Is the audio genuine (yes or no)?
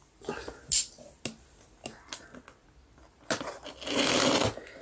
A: yes